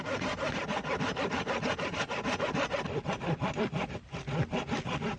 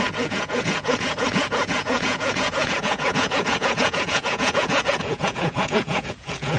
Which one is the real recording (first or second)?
first